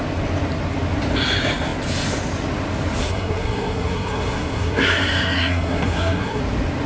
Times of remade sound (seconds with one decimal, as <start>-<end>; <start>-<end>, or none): 3.0-6.4

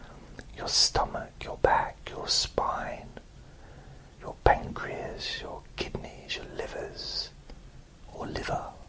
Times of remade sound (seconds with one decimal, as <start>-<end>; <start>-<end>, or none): 8.1-8.9